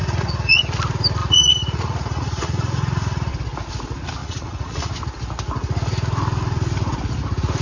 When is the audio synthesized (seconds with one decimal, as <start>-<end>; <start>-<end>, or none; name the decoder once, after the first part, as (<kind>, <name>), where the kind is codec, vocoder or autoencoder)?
0.0-0.6 (vocoder, Vocos); 1.2-3.3; 4.2-4.9